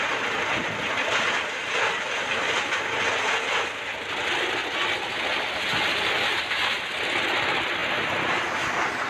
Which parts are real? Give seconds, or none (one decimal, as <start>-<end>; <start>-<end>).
0.0-9.1